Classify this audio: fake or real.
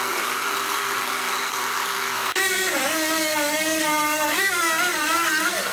fake